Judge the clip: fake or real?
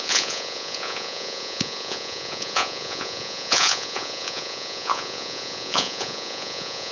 fake